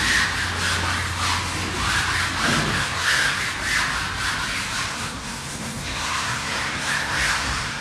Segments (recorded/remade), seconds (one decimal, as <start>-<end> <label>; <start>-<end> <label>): 0.0-2.7 recorded; 2.7-3.4 remade; 3.4-4.9 recorded; 4.9-7.8 remade